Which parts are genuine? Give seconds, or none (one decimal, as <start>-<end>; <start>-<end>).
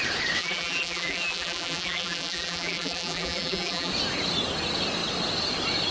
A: 0.0-0.4; 3.9-5.9